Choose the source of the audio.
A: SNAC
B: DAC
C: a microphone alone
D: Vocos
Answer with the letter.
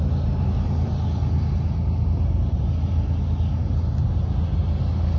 C